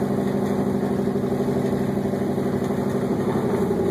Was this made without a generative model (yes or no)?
yes